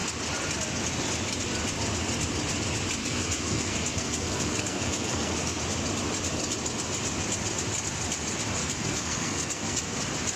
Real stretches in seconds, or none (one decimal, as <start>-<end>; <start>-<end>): 0.0-3.0; 5.6-8.6; 10.0-10.4